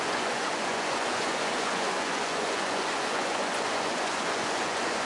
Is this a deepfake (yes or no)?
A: yes